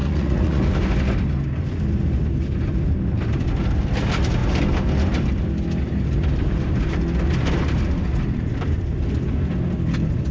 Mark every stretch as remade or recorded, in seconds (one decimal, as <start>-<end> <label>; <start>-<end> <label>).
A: 0.0-0.6 remade; 0.6-10.3 recorded